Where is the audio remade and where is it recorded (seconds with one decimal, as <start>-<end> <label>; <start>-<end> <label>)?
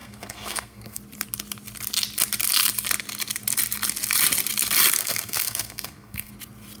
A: 0.0-1.0 remade; 1.0-5.0 recorded; 5.0-6.3 remade; 6.3-6.8 recorded